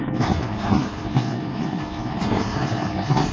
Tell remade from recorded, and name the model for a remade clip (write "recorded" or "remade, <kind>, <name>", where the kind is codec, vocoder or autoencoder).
remade, codec, SNAC